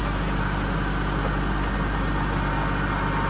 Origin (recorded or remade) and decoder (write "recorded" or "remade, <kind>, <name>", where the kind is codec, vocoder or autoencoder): recorded